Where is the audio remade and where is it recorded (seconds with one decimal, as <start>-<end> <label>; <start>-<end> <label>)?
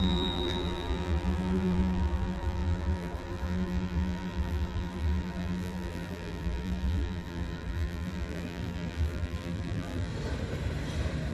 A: 0.0-10.1 remade; 10.1-11.3 recorded